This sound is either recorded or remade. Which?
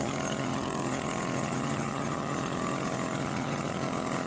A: remade